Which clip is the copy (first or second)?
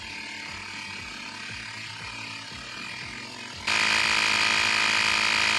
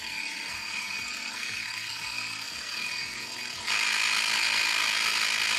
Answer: second